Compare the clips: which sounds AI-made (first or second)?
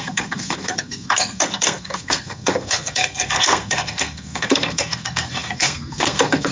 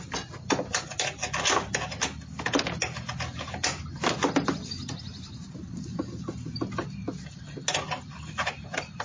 first